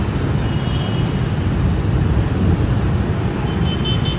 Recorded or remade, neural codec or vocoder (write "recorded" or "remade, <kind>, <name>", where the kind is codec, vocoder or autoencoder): recorded